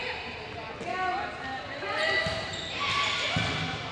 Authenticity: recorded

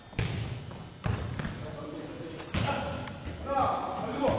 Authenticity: recorded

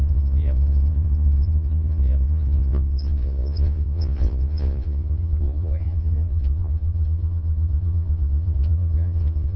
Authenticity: remade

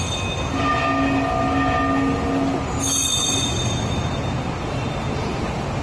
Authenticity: recorded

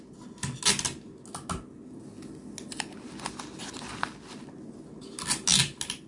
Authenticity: recorded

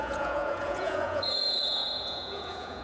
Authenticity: remade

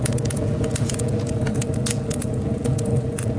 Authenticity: remade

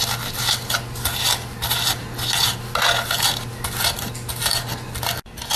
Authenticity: recorded